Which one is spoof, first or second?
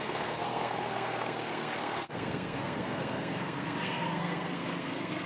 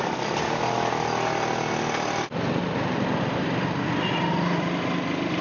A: first